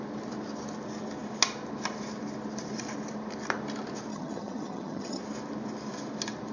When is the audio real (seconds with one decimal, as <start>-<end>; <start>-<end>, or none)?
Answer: 0.0-4.1; 5.2-6.5